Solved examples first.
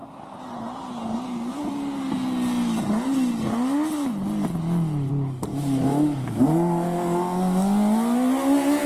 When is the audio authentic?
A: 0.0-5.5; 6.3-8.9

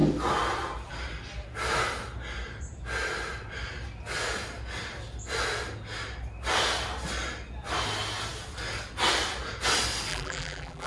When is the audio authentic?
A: 0.0-10.1

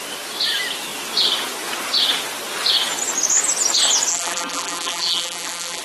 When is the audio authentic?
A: 0.0-4.1

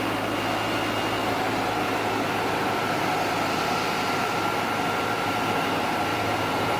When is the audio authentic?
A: 0.0-1.2; 5.3-6.1

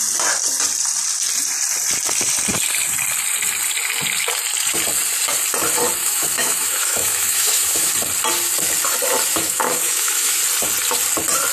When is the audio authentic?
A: 0.0-6.0; 7.9-9.3; 10.4-11.5

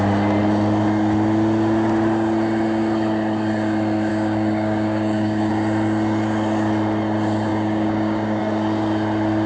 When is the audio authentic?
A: 0.0-4.1; 5.5-7.5; 8.4-9.5

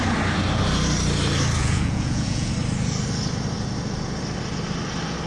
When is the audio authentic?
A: 0.0-1.6; 2.5-5.3

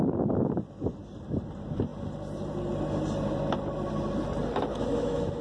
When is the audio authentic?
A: 0.0-4.7